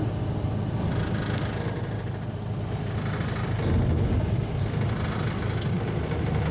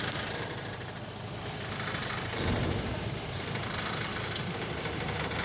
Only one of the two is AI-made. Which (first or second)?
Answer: second